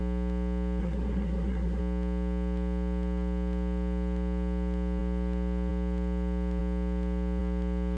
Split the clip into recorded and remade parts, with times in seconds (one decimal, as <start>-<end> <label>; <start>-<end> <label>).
0.0-0.8 recorded; 0.8-1.8 remade; 1.8-8.0 recorded